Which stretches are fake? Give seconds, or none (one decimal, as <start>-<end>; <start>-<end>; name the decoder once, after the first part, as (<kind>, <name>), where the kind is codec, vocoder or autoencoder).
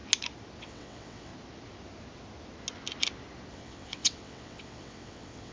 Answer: 0.6-1.3 (vocoder, WaveNeXt); 3.5-5.5